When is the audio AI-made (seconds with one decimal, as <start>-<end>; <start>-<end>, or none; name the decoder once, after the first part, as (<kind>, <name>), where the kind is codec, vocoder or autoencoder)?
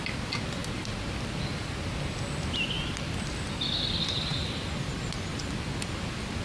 none